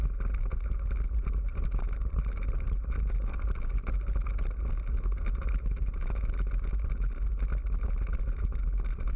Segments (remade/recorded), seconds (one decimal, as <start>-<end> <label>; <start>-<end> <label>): 0.0-9.2 recorded